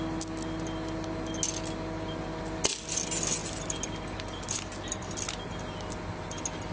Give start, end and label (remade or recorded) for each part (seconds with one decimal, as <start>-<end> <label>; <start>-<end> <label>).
0.0-6.7 recorded